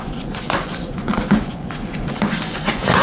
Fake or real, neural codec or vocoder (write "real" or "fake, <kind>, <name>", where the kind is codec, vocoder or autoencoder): fake, vocoder, Vocos